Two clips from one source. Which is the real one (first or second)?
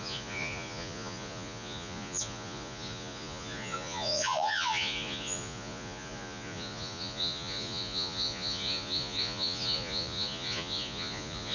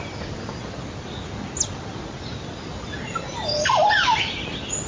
second